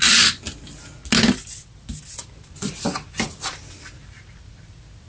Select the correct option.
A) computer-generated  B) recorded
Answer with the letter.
B